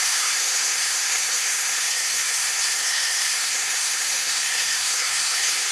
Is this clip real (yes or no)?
no